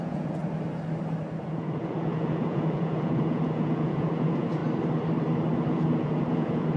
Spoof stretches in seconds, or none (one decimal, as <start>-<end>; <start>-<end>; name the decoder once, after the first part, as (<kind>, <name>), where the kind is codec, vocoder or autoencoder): 0.0-0.4 (vocoder, Vocos); 1.4-4.6; 5.7-6.8